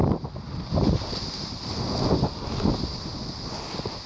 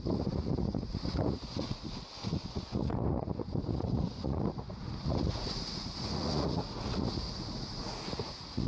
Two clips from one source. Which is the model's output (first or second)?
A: second